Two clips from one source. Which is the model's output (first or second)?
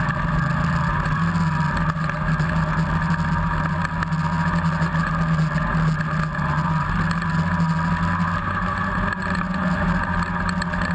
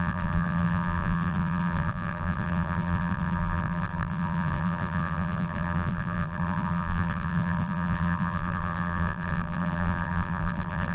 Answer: second